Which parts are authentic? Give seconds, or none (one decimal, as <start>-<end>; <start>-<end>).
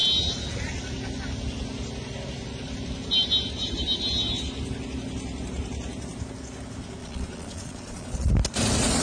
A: 0.0-7.0; 8.3-9.0